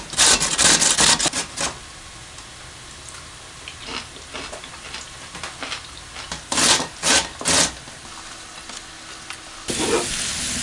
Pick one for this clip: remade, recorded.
recorded